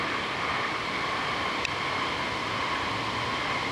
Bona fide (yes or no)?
yes